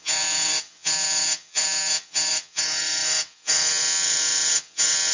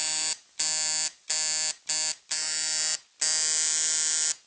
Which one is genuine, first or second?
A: second